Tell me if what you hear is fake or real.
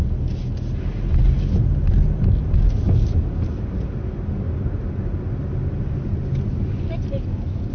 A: real